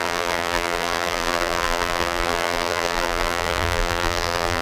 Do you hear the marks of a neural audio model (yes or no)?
yes